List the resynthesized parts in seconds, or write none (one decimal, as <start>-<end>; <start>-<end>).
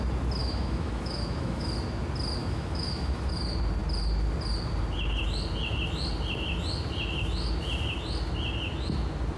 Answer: 0.4-1.7; 2.4-3.3